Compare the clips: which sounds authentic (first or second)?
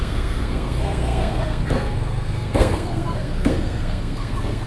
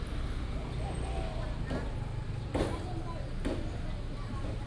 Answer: second